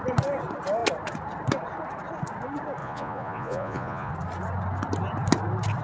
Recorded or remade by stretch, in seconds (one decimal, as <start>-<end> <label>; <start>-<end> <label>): 0.0-2.8 recorded; 2.8-4.1 remade; 4.1-5.8 recorded